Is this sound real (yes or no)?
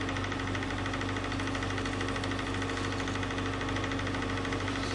yes